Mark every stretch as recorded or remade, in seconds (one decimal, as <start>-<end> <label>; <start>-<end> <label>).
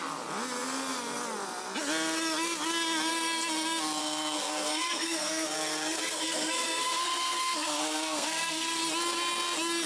0.0-4.0 recorded; 4.0-8.8 remade; 8.8-9.9 recorded